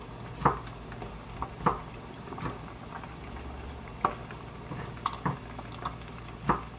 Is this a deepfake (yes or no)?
no